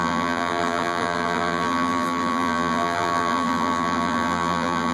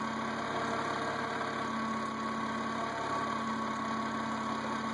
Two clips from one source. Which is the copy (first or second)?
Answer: first